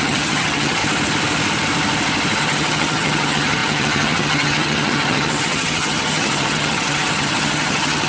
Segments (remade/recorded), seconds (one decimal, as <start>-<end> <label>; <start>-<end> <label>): 0.0-0.8 remade; 0.8-2.4 recorded; 2.4-8.1 remade